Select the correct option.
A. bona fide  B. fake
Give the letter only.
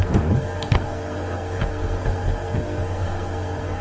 B